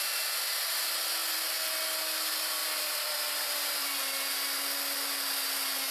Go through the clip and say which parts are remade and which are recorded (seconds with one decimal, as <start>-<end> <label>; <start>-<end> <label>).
0.0-2.6 recorded; 2.6-4.0 remade; 4.0-5.9 recorded